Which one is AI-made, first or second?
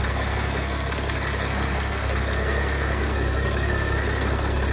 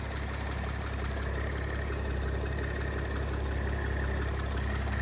first